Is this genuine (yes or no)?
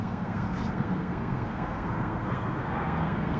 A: no